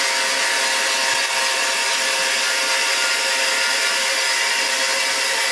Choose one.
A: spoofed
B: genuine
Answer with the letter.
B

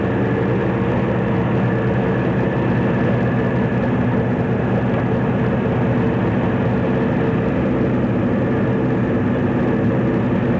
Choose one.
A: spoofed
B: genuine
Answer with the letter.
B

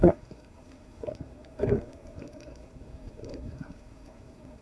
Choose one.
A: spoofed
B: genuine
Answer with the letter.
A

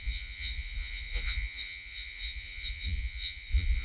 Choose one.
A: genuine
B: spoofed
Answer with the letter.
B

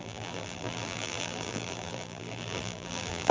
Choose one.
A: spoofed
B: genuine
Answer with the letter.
A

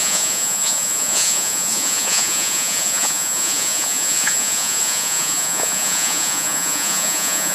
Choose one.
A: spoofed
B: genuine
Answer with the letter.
A